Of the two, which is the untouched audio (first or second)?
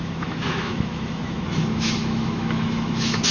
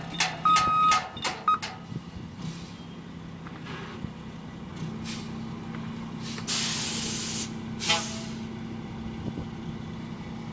second